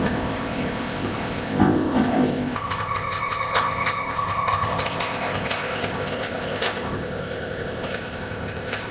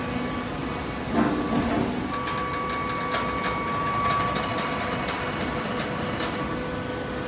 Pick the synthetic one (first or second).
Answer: first